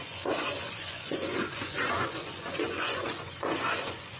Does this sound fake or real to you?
fake